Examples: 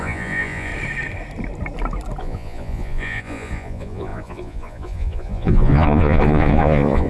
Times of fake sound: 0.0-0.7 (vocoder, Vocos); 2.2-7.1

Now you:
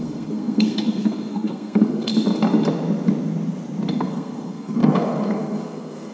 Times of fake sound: 0.0-2.1 (codec, SNAC); 3.9-6.1

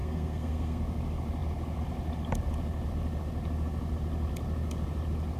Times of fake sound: 0.0-0.8 (codec, SNAC)

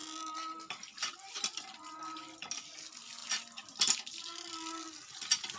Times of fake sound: none

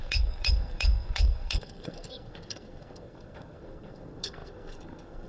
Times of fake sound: 0.0-5.3 (codec, SNAC)

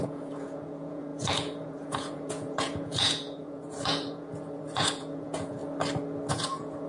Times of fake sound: 0.0-5.6 (vocoder, Vocos); 6.3-6.9

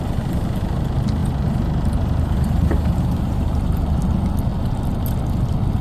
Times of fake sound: 1.2-3.8 (vocoder, BigVGAN v2)